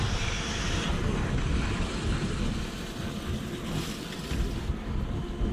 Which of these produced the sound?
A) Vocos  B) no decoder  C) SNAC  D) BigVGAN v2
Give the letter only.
B